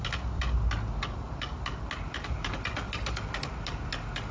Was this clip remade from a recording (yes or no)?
no